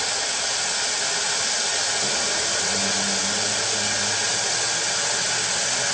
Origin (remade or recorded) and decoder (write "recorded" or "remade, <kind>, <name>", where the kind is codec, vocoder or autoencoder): recorded